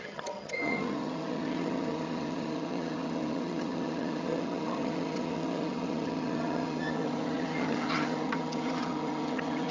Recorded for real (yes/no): no